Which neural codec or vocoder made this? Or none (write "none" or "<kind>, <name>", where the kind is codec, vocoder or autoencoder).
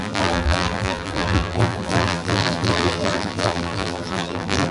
vocoder, BigVGAN v2